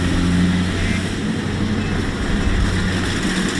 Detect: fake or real real